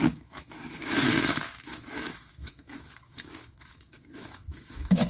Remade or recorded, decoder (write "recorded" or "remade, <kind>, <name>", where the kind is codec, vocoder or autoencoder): remade, autoencoder, DAC-VAE